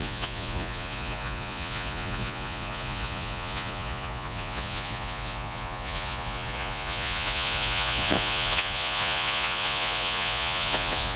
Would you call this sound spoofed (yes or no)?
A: yes